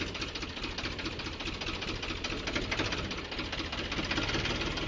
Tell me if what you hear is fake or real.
real